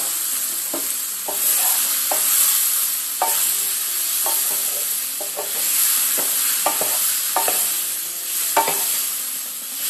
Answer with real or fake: real